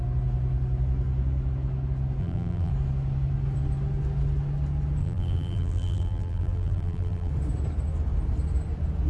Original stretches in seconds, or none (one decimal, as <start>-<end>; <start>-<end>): 0.0-2.2; 2.7-5.0; 7.3-9.1